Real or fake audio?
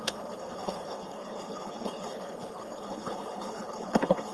fake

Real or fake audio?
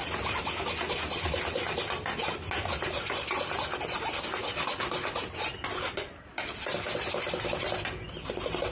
real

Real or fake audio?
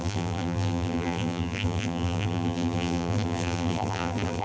fake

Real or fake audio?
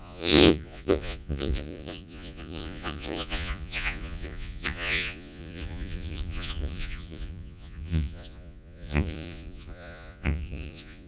fake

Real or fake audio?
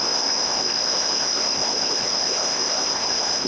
fake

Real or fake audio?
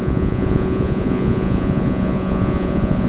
fake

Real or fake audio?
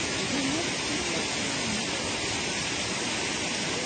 real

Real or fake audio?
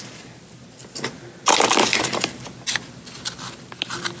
real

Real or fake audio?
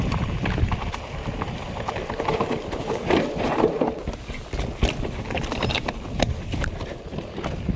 fake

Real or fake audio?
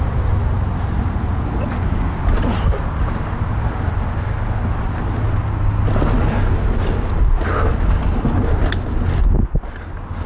real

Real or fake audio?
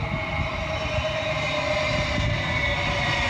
real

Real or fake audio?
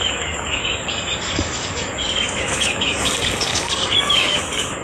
fake